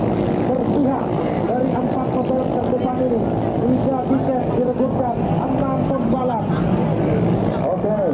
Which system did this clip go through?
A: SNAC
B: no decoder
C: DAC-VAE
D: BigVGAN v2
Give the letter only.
B